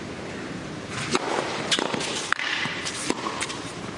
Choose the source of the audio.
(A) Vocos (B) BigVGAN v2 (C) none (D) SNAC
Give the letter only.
B